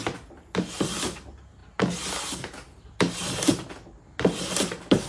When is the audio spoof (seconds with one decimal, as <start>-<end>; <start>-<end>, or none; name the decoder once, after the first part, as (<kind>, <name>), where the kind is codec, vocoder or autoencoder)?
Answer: none